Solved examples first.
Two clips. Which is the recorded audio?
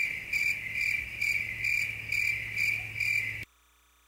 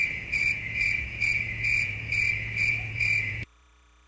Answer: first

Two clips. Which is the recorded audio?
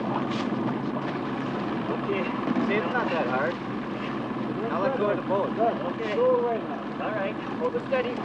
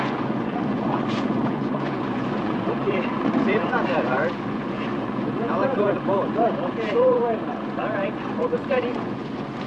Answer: first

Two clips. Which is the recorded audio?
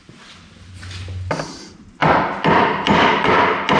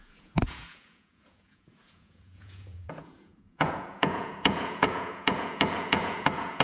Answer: first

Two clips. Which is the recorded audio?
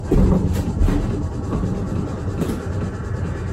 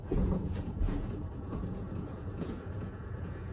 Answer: first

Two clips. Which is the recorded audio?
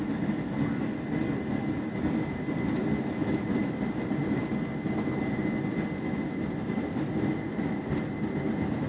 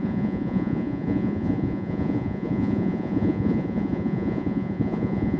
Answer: first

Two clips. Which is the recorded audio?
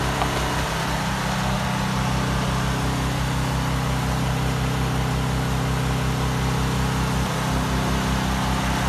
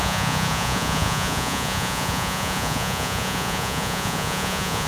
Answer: first